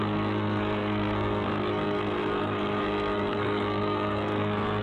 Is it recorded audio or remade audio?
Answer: remade